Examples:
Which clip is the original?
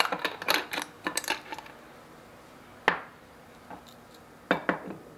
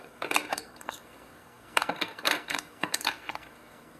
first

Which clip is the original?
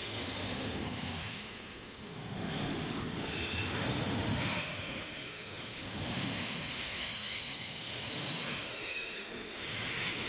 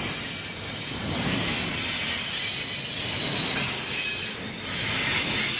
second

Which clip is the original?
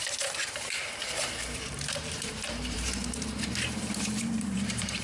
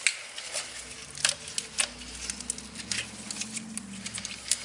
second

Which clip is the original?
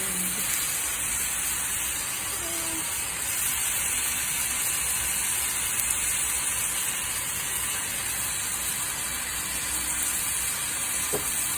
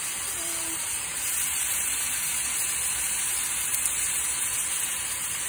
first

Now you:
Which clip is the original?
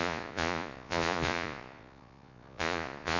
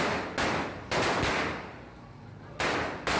second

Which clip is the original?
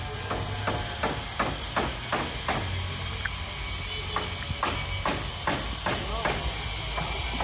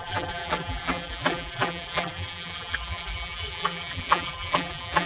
first